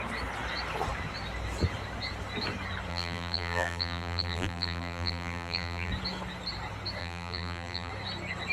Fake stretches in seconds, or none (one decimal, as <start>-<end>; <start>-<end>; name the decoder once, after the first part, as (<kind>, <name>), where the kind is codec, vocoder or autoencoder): 2.9-5.9 (vocoder, BigVGAN v2); 7.0-7.9